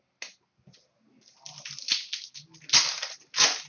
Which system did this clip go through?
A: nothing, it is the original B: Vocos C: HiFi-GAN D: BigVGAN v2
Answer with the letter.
A